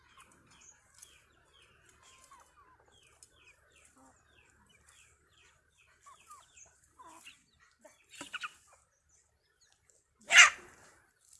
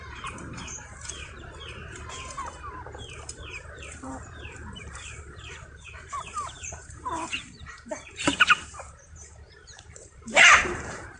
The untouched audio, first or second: first